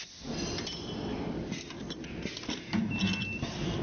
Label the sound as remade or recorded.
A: recorded